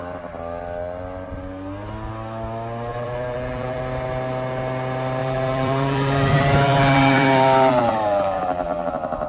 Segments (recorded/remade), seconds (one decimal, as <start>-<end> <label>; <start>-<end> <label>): 0.0-2.9 recorded; 2.9-3.8 remade; 3.8-5.2 recorded; 5.2-8.9 remade; 8.9-9.3 recorded